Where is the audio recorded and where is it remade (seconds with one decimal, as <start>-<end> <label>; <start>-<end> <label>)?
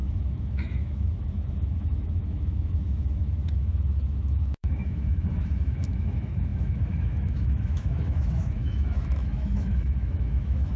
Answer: 0.0-10.8 remade